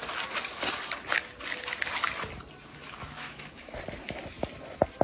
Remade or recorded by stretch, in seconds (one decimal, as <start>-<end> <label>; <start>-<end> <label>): 0.0-2.7 recorded; 2.7-3.8 remade; 3.8-5.0 recorded